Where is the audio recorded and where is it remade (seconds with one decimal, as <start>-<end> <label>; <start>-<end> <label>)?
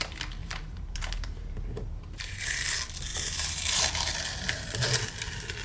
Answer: 0.0-0.4 recorded; 0.4-2.4 remade; 2.4-3.1 recorded; 3.1-4.0 remade; 4.0-5.6 recorded